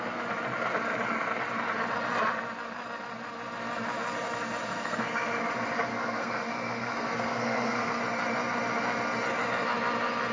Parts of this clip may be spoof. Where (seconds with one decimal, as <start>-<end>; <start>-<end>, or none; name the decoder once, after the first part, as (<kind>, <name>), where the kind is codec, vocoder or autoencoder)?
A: 4.7-5.5 (codec, SNAC); 5.9-8.0